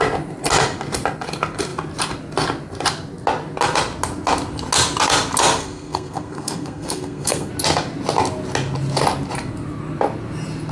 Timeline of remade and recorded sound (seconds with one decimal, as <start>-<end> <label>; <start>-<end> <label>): 0.0-5.6 recorded; 5.6-7.5 remade; 7.5-10.7 recorded